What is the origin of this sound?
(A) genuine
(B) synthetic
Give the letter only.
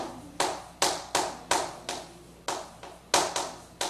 A